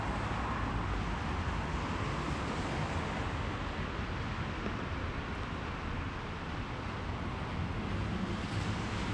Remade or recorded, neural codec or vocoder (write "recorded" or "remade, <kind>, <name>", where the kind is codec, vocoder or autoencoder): recorded